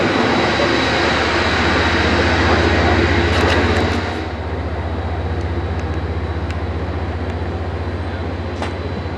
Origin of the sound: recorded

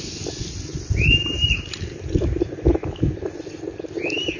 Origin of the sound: recorded